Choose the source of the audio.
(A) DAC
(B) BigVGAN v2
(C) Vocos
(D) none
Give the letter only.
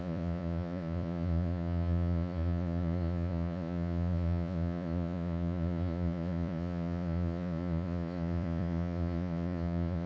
C